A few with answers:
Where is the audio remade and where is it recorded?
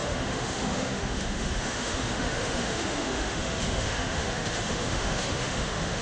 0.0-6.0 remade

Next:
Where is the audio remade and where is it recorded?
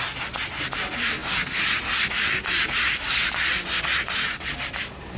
0.0-5.2 recorded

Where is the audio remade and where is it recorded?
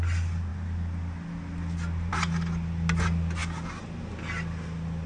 0.0-5.1 recorded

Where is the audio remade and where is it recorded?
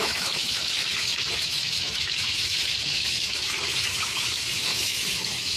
0.0-5.6 remade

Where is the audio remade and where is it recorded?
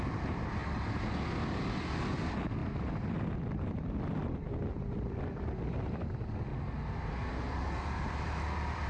0.0-0.6 remade; 0.6-2.2 recorded; 2.2-6.5 remade; 6.5-7.3 recorded; 7.3-8.9 remade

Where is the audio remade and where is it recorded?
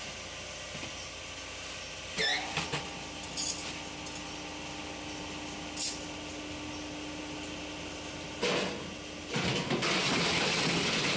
0.0-11.2 recorded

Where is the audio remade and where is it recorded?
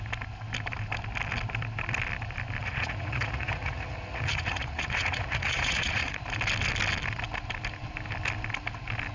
0.0-2.6 recorded; 2.6-6.2 remade; 6.2-9.1 recorded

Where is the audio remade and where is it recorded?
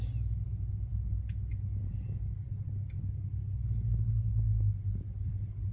0.0-5.7 recorded